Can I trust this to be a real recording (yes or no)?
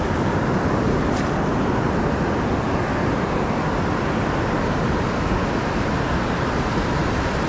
yes